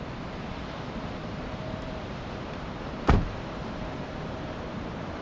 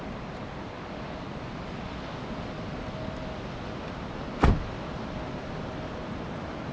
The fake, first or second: first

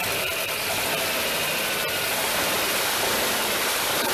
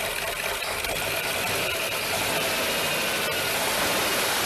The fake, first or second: first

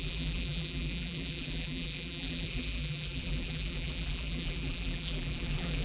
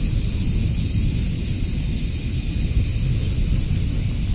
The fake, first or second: first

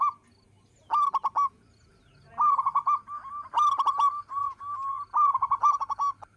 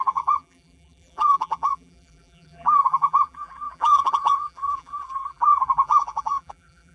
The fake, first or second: second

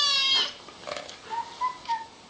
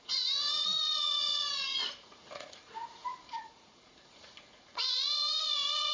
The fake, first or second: second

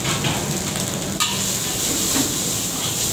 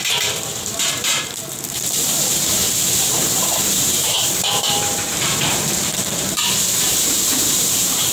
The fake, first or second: second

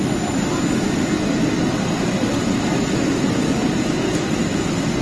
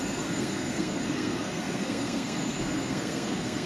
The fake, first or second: second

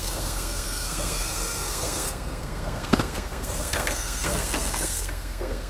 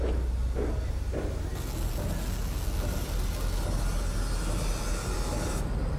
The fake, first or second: first